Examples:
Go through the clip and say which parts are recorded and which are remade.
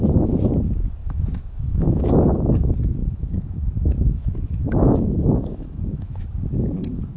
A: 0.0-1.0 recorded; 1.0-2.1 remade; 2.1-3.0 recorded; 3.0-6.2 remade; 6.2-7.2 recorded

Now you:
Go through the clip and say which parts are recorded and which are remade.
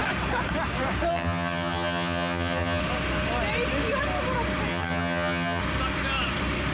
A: 0.0-1.1 recorded; 1.1-2.8 remade; 2.8-4.7 recorded; 4.7-5.6 remade; 5.6-6.7 recorded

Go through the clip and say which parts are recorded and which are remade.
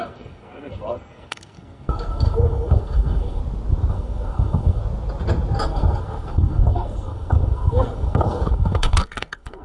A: 0.0-3.4 remade; 3.4-3.9 recorded; 3.9-4.8 remade; 4.8-5.6 recorded; 5.6-9.6 remade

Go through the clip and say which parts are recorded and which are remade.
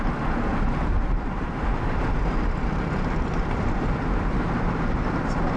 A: 0.0-0.5 recorded; 0.5-3.9 remade; 3.9-5.6 recorded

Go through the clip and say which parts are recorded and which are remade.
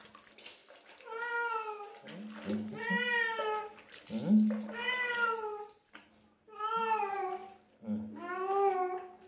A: 0.0-9.3 recorded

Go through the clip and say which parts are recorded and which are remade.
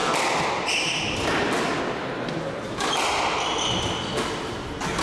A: 0.0-5.0 recorded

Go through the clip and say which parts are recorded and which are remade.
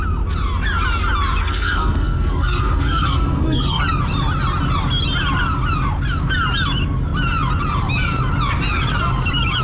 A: 0.0-1.4 recorded; 1.4-3.8 remade; 3.8-9.6 recorded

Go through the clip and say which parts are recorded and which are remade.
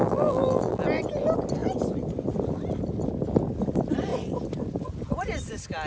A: 0.0-0.8 remade; 0.8-5.9 recorded